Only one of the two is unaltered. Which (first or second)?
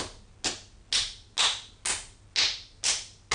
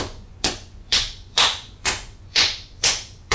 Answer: first